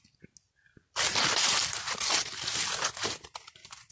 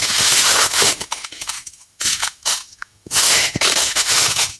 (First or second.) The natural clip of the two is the first